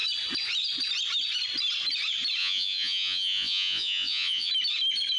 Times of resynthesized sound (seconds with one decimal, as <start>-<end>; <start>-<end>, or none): 2.4-4.5

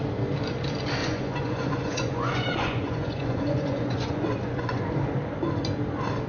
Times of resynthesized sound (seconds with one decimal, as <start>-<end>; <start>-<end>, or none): 1.0-4.8

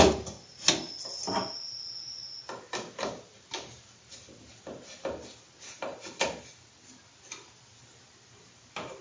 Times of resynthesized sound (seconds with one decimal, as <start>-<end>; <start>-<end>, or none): none

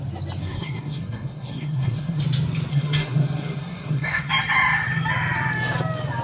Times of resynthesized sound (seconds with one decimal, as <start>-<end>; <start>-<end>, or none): 0.4-2.2; 2.7-4.3

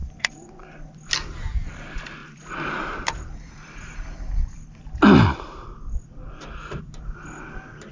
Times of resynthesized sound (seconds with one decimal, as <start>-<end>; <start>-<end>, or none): 0.0-1.1; 2.2-6.8

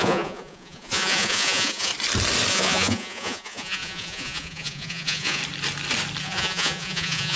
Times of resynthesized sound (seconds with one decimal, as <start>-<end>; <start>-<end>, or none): 0.0-1.9; 2.5-5.4; 6.2-7.4

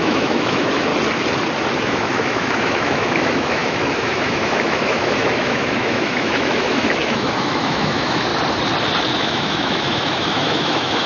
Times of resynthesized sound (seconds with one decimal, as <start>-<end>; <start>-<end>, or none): 0.0-0.9; 1.8-8.3; 9.1-11.1